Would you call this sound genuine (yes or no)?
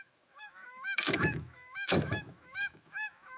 no